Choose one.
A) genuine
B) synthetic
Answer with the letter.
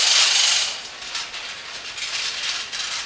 A